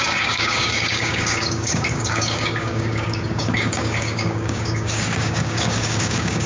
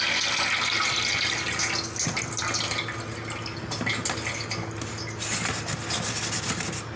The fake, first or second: first